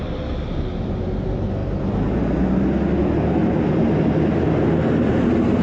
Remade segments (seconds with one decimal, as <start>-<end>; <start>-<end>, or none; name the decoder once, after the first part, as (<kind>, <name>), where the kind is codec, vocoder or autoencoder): none